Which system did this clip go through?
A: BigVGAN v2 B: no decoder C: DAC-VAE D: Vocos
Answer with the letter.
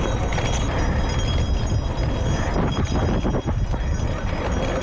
B